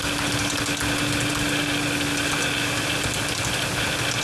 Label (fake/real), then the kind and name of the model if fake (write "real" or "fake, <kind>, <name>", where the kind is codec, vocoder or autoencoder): real